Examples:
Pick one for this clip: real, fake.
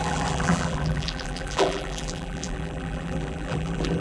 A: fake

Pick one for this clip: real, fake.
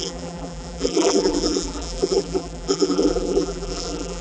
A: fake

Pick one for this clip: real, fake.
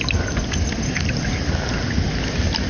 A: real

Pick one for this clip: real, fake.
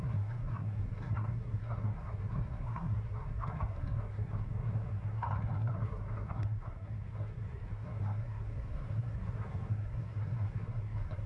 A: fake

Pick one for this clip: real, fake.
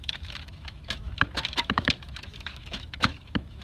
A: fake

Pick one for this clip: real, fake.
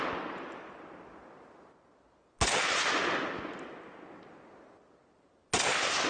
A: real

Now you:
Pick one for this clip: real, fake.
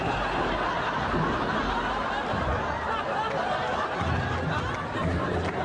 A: real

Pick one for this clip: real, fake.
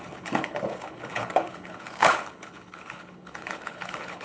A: fake